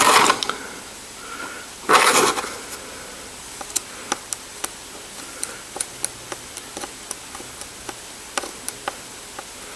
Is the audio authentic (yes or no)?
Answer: yes